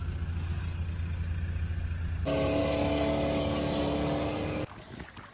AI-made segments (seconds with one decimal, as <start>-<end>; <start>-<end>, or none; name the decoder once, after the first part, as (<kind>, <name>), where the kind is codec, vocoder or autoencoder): 2.6-3.8 (codec, DAC)

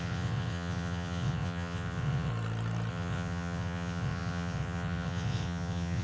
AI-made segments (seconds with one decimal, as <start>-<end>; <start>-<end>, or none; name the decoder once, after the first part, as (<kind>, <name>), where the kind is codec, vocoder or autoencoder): 0.0-2.3 (vocoder, WaveNeXt); 2.9-6.0

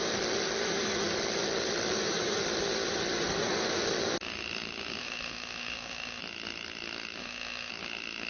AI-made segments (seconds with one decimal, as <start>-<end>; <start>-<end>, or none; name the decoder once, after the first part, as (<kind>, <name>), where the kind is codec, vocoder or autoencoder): 5.0-6.2 (autoencoder, DAC-VAE); 7.2-7.7

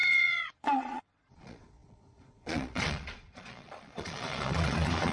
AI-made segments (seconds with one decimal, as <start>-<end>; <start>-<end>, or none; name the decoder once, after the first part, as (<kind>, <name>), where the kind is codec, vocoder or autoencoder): 0.0-5.1 (vocoder, Vocos)

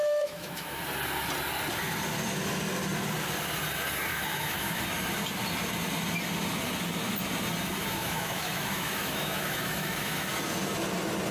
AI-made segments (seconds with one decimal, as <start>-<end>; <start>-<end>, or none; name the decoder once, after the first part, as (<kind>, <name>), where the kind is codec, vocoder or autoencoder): 0.0-0.8 (autoencoder, DAC-VAE); 4.1-4.8; 7.8-10.3